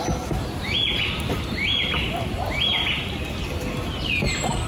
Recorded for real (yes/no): yes